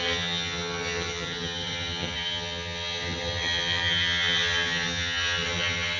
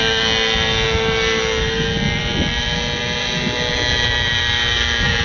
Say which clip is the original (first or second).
second